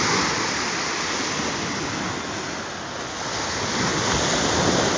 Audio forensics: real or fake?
real